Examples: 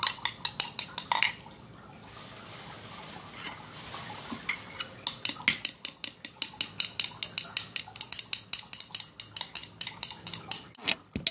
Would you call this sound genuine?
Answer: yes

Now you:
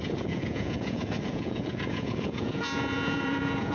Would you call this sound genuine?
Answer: no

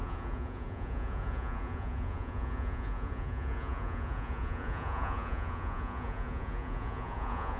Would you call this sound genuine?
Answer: no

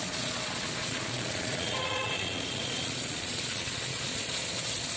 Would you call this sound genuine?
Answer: no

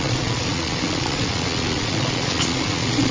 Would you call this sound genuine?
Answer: no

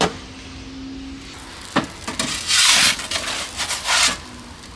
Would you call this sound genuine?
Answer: yes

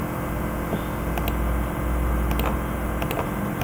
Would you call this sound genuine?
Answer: yes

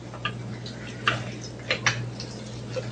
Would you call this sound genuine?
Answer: yes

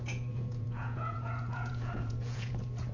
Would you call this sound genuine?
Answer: no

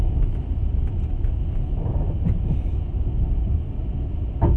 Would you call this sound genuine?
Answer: yes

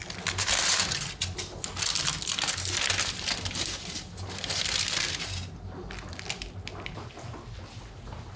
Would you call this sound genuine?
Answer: yes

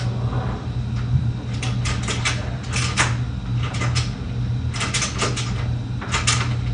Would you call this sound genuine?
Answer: yes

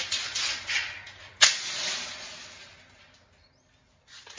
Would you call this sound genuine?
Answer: yes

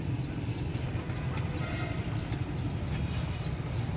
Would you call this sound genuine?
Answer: yes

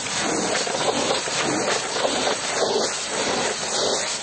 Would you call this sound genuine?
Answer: yes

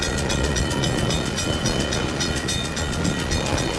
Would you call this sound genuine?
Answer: no